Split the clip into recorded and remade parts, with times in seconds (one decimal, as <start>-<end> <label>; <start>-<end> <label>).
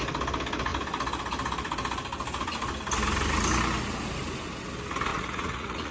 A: 0.0-5.1 recorded; 5.1-5.9 remade